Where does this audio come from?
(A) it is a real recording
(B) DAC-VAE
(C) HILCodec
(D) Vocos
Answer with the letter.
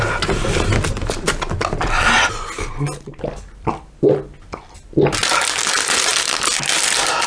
A